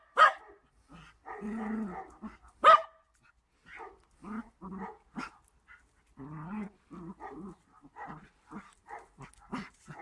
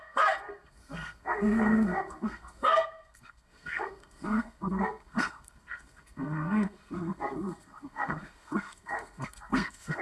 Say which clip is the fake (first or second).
second